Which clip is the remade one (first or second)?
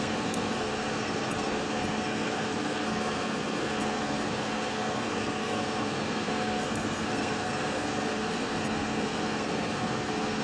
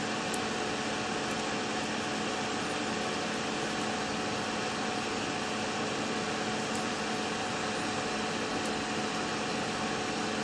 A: first